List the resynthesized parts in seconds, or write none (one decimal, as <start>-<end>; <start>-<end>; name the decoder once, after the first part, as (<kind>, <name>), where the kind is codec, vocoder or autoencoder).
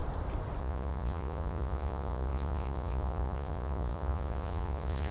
0.6-5.1 (vocoder, Vocos)